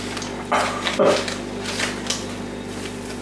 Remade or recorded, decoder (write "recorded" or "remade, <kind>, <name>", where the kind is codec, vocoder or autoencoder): recorded